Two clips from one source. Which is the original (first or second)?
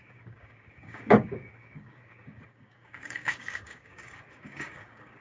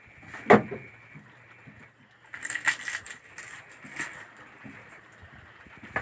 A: second